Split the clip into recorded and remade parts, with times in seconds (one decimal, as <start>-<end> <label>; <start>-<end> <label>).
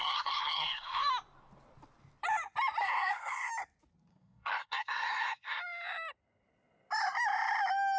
0.0-1.0 remade; 1.0-2.8 recorded; 2.8-3.5 remade; 3.5-4.1 recorded; 4.1-5.6 remade; 5.6-8.0 recorded